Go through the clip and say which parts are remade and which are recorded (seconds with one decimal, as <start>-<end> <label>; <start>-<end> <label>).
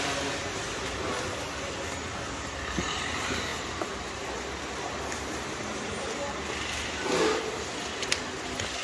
0.0-8.8 recorded